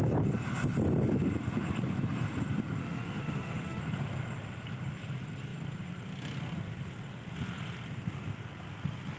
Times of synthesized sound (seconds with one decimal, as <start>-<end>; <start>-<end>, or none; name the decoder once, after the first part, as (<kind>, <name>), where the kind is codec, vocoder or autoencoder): 2.8-3.8 (autoencoder, DAC-VAE)

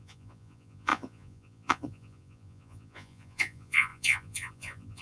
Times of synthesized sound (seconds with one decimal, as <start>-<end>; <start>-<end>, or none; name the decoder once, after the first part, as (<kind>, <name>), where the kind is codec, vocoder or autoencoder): 0.0-5.0 (vocoder, Vocos)

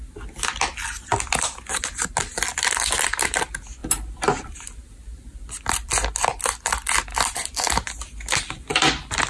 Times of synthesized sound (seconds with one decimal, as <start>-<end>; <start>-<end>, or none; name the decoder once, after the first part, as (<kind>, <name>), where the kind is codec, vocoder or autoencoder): 3.8-5.9 (vocoder, BigVGAN v2); 7.1-8.0; 8.7-9.3

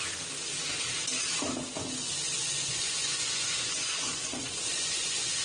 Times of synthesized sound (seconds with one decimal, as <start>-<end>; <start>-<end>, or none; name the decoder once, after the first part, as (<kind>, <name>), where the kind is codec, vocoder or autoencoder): 2.0-5.4 (vocoder, Vocos)

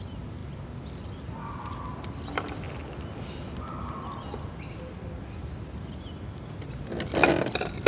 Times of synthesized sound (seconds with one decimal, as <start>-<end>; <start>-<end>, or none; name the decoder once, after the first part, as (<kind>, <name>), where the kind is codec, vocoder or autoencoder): none

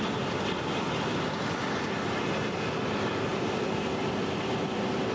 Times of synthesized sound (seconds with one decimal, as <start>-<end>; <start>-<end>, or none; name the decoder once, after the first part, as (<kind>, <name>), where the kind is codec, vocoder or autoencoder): none

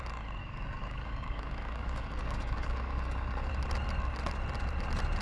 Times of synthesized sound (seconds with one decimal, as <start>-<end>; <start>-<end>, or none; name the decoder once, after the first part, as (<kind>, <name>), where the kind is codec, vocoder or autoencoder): 0.4-3.5 (codec, DAC)